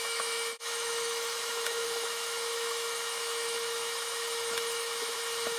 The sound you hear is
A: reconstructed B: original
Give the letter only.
A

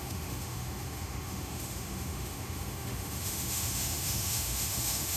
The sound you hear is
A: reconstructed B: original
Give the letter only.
A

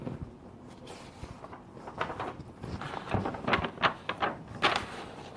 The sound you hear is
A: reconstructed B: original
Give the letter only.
B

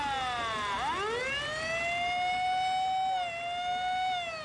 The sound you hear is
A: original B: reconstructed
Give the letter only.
A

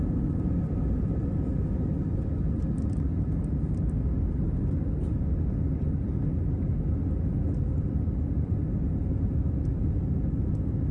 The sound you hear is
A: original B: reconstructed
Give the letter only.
A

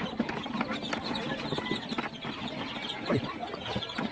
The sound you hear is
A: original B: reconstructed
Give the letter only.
A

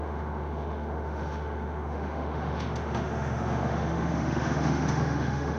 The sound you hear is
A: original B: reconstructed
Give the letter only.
B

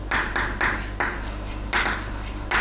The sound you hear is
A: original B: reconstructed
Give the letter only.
A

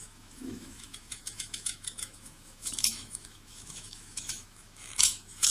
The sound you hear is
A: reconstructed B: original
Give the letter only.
A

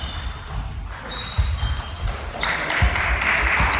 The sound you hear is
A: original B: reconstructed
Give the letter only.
A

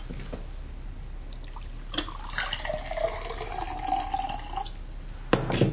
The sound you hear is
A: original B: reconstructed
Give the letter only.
A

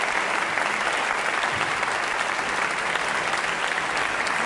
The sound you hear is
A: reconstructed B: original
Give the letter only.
B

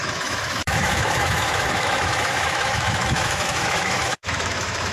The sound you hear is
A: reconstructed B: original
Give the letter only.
A